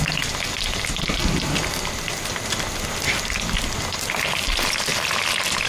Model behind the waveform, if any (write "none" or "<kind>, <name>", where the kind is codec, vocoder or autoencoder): none